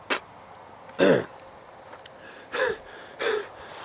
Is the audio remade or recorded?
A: recorded